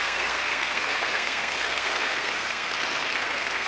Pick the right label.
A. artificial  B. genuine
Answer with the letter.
A